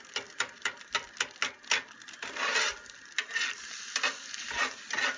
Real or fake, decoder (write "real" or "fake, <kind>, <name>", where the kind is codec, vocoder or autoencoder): real